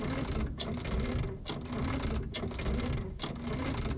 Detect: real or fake real